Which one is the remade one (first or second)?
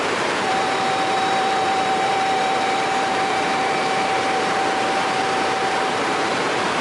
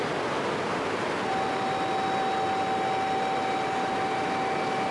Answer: first